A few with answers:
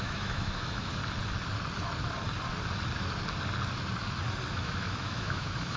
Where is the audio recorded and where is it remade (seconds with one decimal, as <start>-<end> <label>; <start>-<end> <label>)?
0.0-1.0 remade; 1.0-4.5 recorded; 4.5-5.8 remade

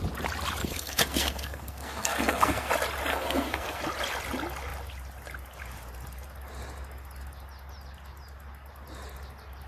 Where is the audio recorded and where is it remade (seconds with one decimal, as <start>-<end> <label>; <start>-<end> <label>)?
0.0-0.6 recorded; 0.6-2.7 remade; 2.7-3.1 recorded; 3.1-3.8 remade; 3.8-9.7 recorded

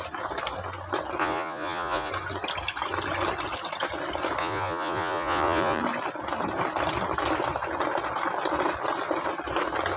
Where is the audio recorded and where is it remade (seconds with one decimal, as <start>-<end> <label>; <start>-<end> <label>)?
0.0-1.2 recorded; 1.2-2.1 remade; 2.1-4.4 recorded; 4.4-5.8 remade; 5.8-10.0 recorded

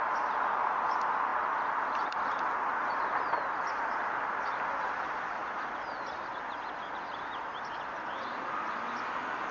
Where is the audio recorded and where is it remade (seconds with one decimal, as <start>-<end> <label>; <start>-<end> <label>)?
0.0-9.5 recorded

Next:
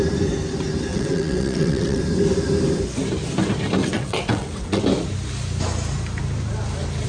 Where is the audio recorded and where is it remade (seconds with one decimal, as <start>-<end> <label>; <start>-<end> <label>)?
0.0-0.9 recorded; 0.9-2.0 remade; 2.0-3.8 recorded; 3.8-4.8 remade; 4.8-7.1 recorded